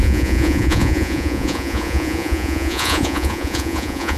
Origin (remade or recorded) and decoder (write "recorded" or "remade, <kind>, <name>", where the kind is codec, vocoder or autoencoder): remade, vocoder, Vocos